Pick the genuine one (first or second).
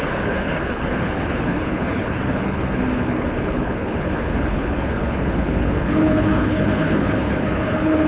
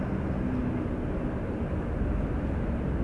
second